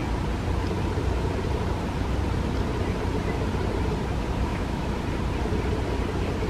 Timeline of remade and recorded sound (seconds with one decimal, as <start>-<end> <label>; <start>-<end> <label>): 0.0-4.5 recorded; 4.5-5.0 remade; 5.0-6.5 recorded